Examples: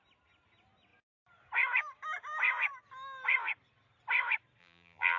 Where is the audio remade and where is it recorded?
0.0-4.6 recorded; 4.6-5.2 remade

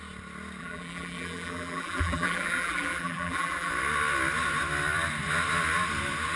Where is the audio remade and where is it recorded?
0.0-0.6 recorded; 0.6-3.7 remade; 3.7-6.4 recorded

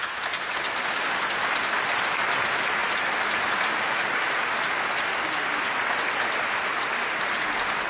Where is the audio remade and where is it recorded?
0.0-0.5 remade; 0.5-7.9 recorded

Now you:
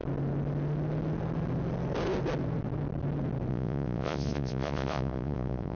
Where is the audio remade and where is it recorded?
0.0-3.5 recorded; 3.5-5.8 remade